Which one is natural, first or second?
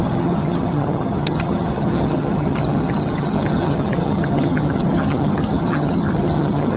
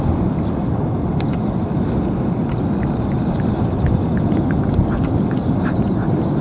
second